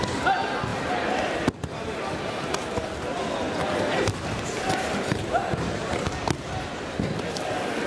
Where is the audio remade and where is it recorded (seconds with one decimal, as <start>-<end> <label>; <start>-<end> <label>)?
0.0-7.9 recorded